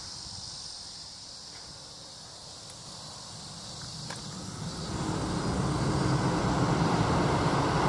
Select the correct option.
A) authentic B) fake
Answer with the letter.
A